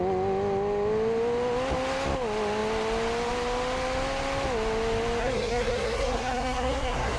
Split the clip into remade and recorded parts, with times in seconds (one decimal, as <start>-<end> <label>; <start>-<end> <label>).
0.0-5.2 recorded; 5.2-7.2 remade